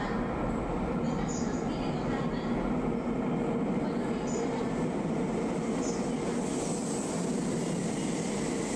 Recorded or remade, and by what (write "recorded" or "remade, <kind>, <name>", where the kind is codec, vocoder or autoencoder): recorded